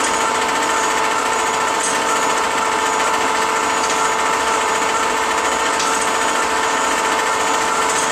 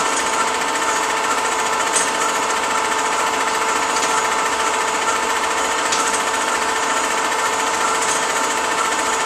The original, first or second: first